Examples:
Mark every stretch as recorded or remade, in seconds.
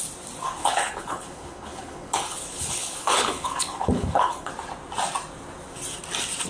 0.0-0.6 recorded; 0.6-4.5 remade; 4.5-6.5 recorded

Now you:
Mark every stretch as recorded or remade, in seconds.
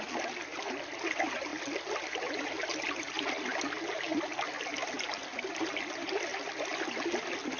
0.0-7.6 recorded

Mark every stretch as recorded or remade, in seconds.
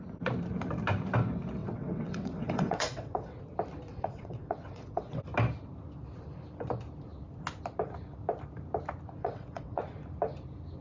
0.0-1.6 recorded; 1.6-3.4 remade; 3.4-3.9 recorded; 3.9-5.2 remade; 5.2-9.2 recorded; 9.2-9.8 remade; 9.8-10.8 recorded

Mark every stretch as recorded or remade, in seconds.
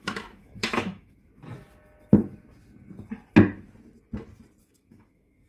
0.0-1.3 remade; 1.3-4.6 recorded; 4.6-5.5 remade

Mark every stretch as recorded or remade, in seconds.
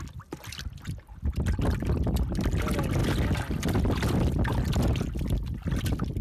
0.0-6.2 recorded